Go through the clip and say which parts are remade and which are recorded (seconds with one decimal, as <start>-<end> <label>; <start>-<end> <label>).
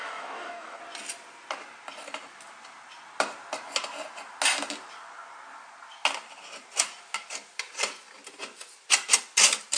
0.0-0.8 remade; 0.8-9.8 recorded